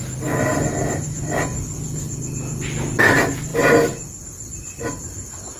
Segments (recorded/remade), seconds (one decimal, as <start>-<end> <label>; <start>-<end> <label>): 0.0-5.6 recorded